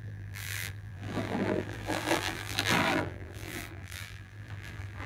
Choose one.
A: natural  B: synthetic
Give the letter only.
B